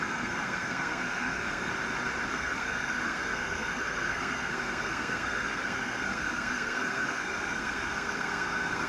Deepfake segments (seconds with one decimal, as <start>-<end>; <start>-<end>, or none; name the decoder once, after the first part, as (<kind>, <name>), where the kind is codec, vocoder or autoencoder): 0.0-1.7 (codec, SNAC); 2.3-8.9